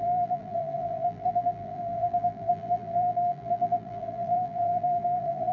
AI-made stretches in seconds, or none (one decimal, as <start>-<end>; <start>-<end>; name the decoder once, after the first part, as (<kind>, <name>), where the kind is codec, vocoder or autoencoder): 0.0-5.5 (vocoder, BigVGAN v2)